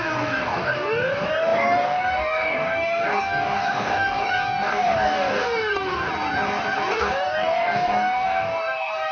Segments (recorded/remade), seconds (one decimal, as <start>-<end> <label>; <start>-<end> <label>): 0.0-6.1 remade; 6.1-6.9 recorded; 6.9-9.1 remade